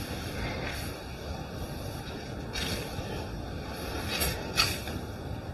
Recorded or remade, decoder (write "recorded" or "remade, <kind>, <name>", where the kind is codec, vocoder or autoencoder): remade, vocoder, BigVGAN v2